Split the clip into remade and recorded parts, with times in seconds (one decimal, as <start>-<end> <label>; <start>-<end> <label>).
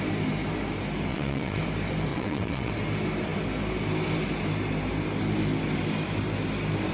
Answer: 0.0-1.1 recorded; 1.1-1.6 remade; 1.6-2.1 recorded; 2.1-2.7 remade; 2.7-6.9 recorded